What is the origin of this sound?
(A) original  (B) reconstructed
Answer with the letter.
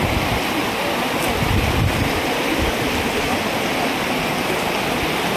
A